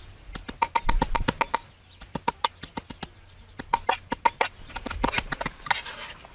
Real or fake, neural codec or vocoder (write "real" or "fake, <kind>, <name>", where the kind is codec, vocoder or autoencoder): real